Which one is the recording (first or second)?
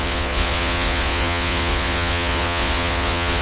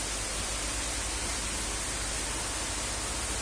second